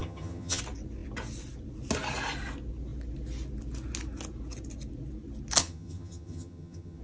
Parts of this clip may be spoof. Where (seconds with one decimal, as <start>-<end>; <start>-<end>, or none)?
0.0-0.6; 5.6-7.0

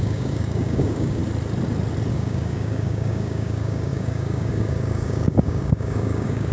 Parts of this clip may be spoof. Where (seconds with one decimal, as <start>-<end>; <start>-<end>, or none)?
0.0-1.2; 2.1-6.5